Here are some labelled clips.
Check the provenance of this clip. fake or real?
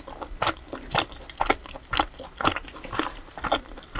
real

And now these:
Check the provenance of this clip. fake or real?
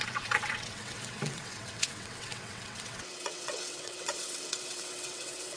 fake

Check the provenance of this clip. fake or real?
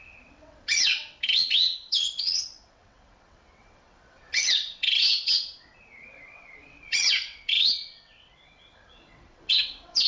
fake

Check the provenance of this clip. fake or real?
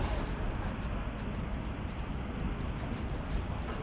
real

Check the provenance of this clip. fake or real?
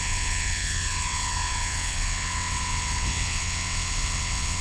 fake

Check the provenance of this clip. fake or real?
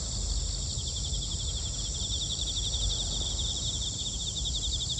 real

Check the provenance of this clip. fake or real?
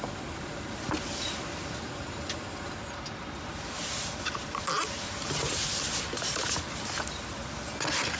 real